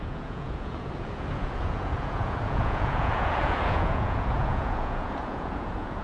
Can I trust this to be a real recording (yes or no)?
no